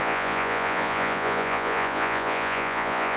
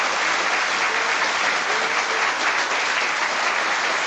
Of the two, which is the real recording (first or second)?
second